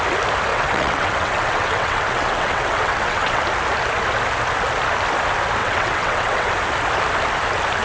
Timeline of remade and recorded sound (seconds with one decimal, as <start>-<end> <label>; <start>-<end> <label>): 0.0-0.5 recorded; 0.5-3.4 remade; 3.4-5.6 recorded; 5.6-6.5 remade; 6.5-7.8 recorded